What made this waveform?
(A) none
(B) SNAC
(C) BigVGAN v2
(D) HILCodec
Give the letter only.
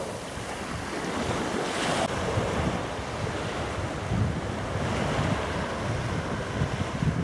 A